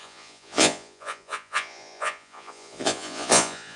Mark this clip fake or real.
fake